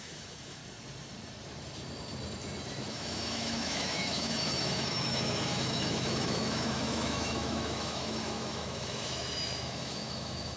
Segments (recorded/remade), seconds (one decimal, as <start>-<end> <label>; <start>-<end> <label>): 0.0-0.6 remade; 0.6-2.9 recorded; 2.9-10.6 remade